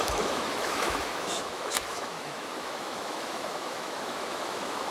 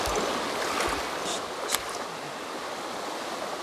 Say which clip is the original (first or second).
second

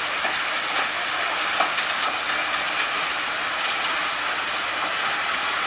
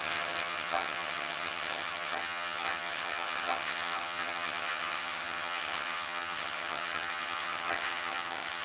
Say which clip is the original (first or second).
first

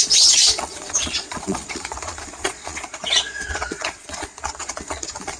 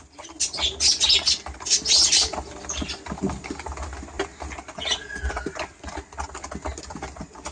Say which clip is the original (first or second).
second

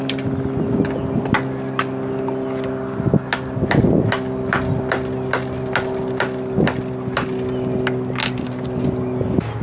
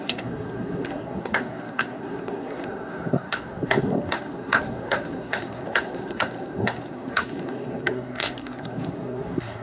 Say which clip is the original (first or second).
first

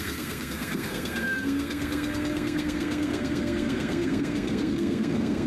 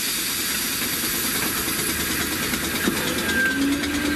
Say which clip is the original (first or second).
second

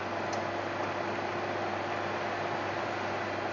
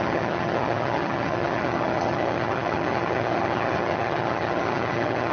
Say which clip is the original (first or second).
first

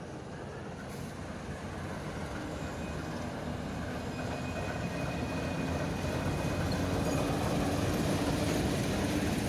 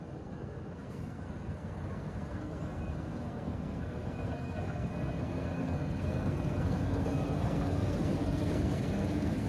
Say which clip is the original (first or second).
first